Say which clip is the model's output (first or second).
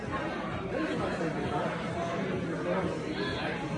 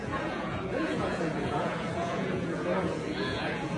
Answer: second